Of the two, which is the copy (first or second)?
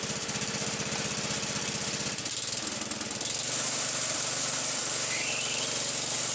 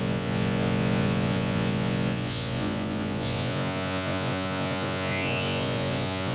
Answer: second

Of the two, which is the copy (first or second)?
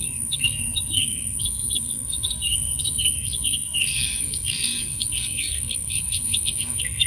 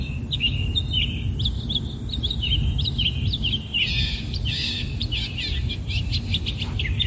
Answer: first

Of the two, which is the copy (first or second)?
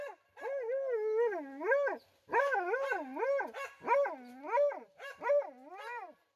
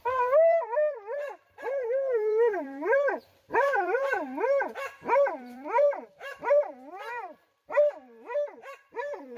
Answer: second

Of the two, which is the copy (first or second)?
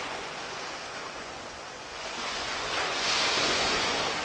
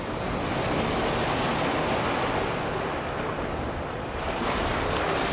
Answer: first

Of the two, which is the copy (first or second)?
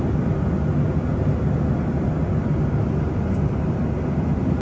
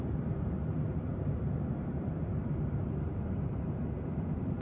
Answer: second